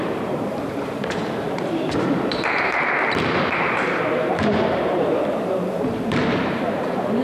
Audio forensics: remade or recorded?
remade